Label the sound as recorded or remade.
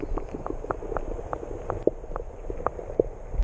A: recorded